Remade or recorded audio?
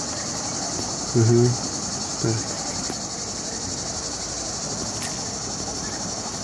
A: recorded